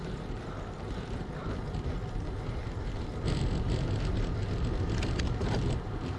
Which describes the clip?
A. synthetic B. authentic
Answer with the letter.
B